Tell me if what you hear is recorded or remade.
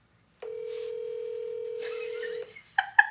recorded